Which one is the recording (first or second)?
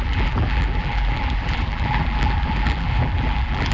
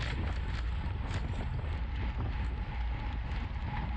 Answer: second